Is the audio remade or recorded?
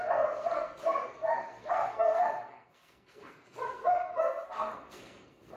remade